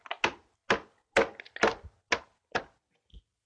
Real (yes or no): yes